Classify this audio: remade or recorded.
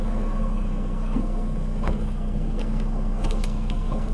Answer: remade